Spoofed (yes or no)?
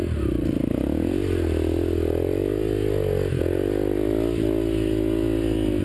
no